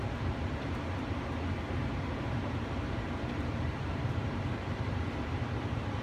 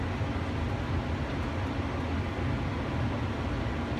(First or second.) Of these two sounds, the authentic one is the second